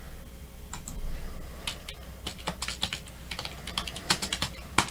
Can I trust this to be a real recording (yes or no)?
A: yes